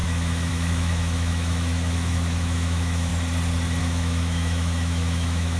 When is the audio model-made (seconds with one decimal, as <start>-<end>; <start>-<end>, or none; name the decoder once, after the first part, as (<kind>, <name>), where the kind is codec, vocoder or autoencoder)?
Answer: 0.0-3.1 (autoencoder, DAC-VAE); 3.8-5.6